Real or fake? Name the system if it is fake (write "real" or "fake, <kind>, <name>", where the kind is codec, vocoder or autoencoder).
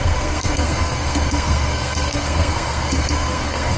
fake, codec, SNAC